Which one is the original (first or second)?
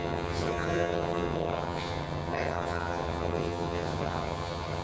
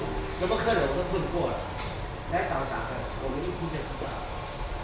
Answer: second